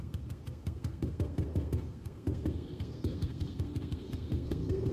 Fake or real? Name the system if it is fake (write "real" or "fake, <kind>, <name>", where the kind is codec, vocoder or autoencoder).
fake, codec, SNAC